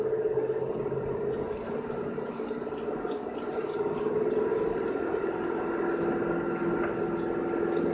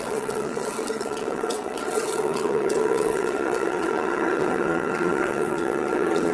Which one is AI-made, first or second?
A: second